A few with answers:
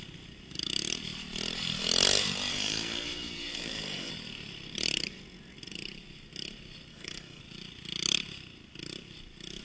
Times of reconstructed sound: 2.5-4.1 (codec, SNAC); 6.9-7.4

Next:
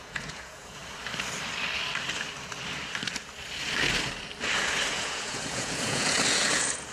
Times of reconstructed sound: 0.0-0.8 (vocoder, Vocos); 4.9-6.9

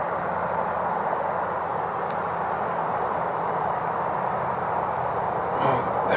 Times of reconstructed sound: 1.7-5.2 (vocoder, BigVGAN v2)

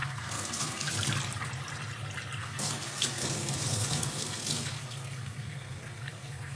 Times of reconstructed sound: 0.0-0.9 (codec, SNAC); 2.4-6.6

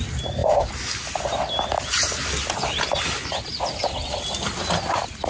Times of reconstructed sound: none

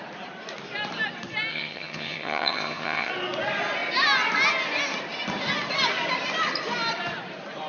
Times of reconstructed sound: 1.5-3.1 (vocoder, HiFi-GAN)

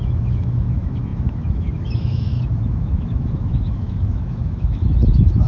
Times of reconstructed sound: 0.0-5.5 (autoencoder, DAC-VAE)

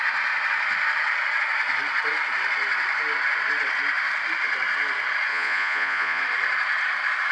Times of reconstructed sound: 5.3-6.2 (vocoder, Vocos)